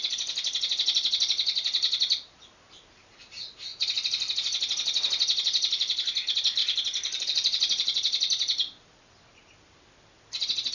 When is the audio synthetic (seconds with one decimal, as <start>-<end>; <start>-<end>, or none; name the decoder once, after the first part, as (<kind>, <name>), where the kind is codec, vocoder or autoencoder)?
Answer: 6.6-9.1 (vocoder, BigVGAN v2)